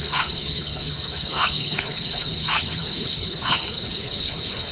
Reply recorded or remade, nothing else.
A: remade